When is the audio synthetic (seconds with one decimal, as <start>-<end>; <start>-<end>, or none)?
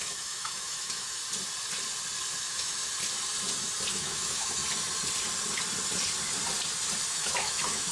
0.0-1.2; 2.4-2.8; 3.9-4.6; 7.1-7.9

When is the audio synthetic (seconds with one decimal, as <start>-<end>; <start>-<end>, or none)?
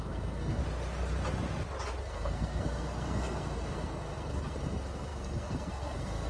0.0-0.6; 2.0-6.3